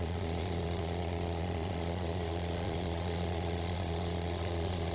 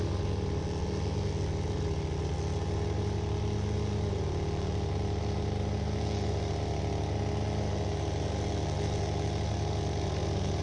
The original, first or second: second